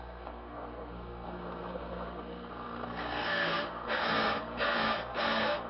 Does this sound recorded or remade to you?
remade